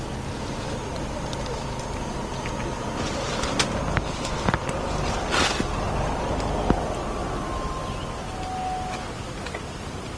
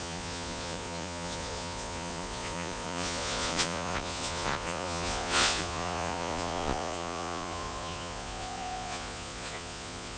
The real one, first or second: first